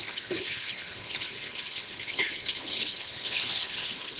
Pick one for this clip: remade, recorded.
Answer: remade